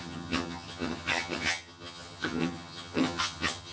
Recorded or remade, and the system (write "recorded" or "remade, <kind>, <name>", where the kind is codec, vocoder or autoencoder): remade, vocoder, HiFi-GAN